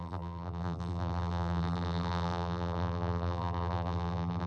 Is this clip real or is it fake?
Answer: fake